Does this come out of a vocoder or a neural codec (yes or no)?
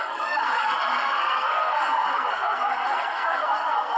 yes